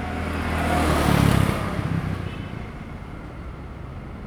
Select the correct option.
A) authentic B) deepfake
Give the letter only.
A